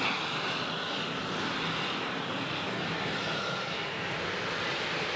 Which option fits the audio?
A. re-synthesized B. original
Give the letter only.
B